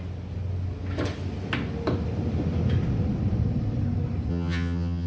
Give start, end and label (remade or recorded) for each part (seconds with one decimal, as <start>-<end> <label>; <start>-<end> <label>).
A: 0.0-4.3 recorded; 4.3-5.1 remade

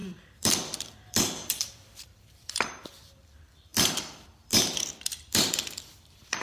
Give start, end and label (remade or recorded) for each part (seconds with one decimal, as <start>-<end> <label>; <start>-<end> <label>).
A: 0.0-6.4 remade

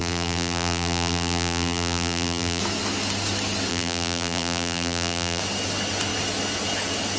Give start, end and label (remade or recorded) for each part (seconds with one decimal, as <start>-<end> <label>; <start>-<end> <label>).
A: 0.0-2.6 remade; 2.6-3.7 recorded; 3.7-5.4 remade; 5.4-7.2 recorded

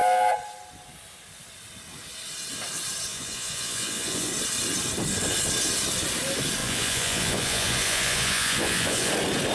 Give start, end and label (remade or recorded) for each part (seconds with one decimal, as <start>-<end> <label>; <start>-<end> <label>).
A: 0.0-3.1 recorded; 3.1-4.3 remade; 4.3-6.6 recorded; 6.6-9.1 remade; 9.1-9.5 recorded

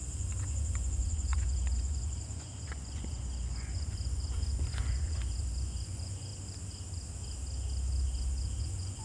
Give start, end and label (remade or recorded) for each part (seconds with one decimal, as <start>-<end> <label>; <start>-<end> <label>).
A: 0.0-6.3 remade; 6.3-8.6 recorded; 8.6-9.0 remade

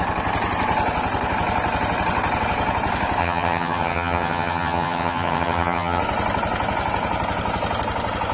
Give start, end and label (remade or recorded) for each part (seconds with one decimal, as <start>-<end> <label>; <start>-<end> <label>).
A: 0.0-3.2 recorded; 3.2-6.0 remade; 6.0-8.3 recorded

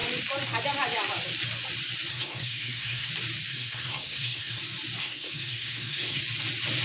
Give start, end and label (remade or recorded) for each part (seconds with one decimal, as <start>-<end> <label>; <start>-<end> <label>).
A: 0.0-2.1 recorded; 2.1-3.1 remade; 3.1-3.5 recorded; 3.5-4.6 remade; 4.6-5.0 recorded; 5.0-6.2 remade; 6.2-6.8 recorded